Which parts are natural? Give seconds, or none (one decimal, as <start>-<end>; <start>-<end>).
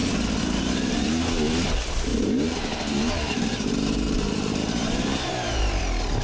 1.2-2.1; 5.8-6.2